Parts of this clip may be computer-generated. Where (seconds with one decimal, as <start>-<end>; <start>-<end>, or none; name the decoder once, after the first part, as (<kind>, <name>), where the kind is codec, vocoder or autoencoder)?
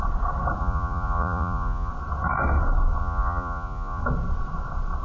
0.6-1.9 (vocoder, Vocos); 3.0-4.0